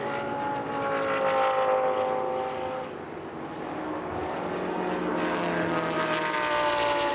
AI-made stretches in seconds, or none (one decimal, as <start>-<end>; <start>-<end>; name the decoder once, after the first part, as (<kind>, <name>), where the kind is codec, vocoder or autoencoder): none